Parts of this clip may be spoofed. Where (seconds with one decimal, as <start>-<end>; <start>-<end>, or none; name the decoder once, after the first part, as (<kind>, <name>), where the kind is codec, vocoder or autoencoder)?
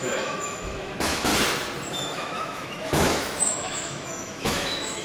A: 0.0-1.3 (autoencoder, DAC-VAE); 1.9-5.0